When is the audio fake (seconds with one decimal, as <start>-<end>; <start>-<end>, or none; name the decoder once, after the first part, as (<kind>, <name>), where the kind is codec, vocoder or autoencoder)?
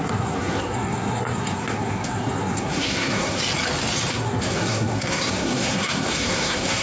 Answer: 0.0-3.4 (codec, SNAC); 4.1-6.8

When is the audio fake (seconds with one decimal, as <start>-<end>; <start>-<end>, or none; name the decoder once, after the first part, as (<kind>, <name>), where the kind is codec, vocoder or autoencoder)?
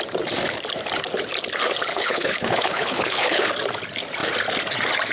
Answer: 1.9-3.5 (codec, HILCodec)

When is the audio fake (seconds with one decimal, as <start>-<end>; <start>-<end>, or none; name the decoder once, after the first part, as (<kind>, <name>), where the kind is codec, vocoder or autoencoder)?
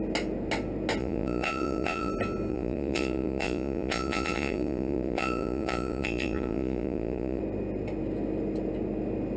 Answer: 1.0-2.1 (vocoder, Vocos); 2.5-7.4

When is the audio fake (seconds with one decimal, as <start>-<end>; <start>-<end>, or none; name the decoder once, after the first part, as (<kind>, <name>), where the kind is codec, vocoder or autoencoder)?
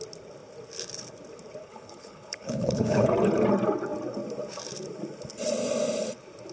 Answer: 1.6-3.1 (codec, HILCodec)